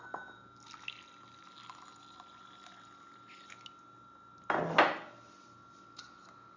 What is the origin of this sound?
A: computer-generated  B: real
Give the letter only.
B